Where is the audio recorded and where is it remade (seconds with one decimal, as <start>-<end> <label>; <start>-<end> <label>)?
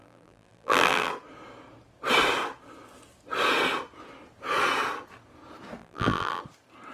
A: 0.0-1.1 remade; 1.1-5.8 recorded; 5.8-6.4 remade; 6.4-6.9 recorded